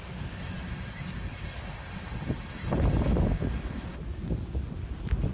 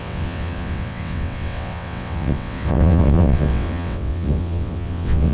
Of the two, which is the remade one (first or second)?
second